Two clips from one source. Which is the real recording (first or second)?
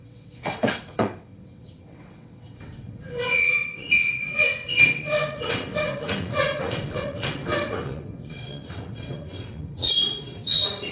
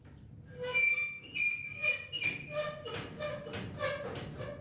second